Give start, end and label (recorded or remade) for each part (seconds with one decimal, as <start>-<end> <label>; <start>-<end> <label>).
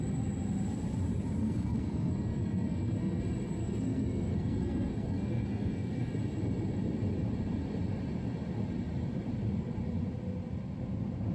0.0-1.4 recorded; 1.4-3.2 remade; 3.2-3.6 recorded; 3.6-6.1 remade; 6.1-11.3 recorded